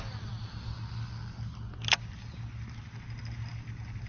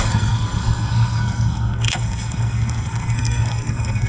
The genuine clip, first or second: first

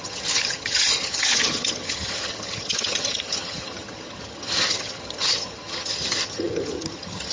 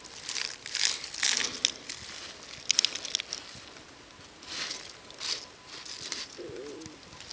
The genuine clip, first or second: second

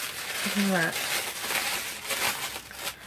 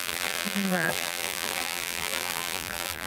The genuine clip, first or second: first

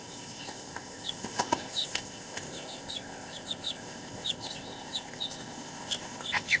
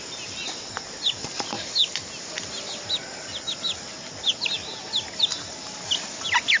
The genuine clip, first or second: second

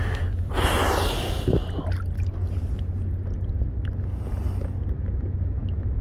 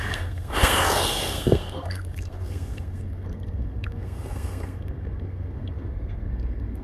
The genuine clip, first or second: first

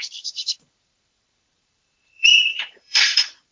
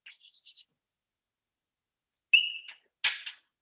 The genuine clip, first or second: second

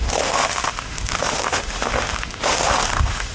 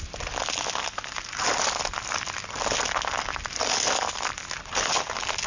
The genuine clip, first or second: second